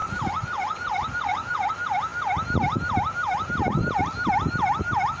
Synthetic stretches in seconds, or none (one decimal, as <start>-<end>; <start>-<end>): 0.0-1.7